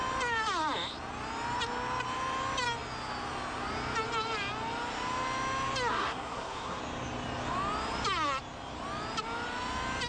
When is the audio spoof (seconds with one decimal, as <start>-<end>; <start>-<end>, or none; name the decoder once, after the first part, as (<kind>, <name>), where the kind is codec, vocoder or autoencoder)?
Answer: 5.9-6.8 (codec, SNAC)

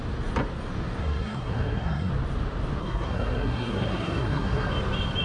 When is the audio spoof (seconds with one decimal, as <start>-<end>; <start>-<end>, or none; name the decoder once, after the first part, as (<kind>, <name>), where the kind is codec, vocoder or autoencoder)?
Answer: 1.0-2.1 (codec, SNAC); 2.8-4.7

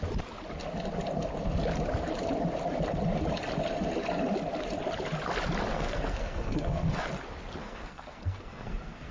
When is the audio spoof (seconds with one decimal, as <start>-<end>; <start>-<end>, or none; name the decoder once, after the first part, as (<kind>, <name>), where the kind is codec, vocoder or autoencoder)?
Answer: 5.7-7.1 (codec, SNAC); 7.6-9.1

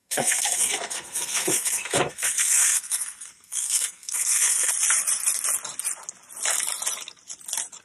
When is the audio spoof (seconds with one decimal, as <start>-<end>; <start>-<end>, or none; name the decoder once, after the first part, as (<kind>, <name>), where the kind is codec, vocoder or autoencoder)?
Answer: 0.0-4.7 (codec, SNAC)

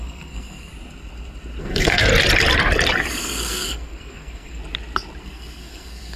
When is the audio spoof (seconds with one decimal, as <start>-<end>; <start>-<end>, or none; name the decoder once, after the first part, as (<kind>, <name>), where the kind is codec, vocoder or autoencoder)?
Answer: 0.0-0.7 (codec, SNAC); 1.6-2.1; 3.1-4.6; 5.2-6.2

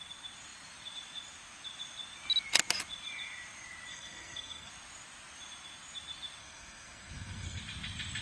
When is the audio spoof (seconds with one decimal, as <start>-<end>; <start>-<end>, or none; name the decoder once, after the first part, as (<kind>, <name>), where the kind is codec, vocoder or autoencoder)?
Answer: 3.9-4.7 (codec, SNAC); 6.4-7.6

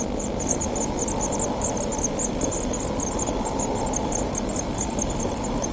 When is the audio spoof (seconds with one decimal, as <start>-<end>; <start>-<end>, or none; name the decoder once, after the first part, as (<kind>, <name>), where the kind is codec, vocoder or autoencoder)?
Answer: none

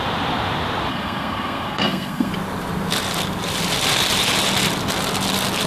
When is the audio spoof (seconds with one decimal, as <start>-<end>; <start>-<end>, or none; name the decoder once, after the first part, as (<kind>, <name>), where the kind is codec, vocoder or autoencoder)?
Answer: 0.9-2.3 (codec, SNAC)